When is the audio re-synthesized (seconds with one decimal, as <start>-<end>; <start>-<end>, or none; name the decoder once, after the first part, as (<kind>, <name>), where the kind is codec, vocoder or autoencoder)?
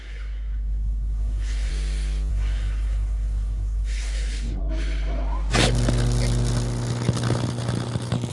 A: 0.0-1.7 (codec, SNAC); 2.3-4.6